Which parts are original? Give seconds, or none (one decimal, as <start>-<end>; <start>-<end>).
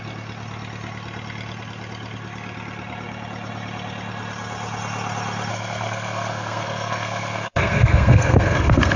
0.0-5.5